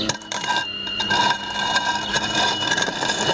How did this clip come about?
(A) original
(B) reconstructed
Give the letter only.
B